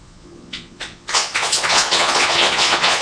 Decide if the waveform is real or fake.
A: fake